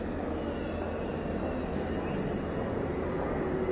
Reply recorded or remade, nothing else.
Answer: recorded